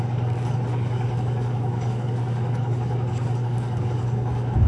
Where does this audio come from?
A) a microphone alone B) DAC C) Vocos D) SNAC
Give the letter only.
B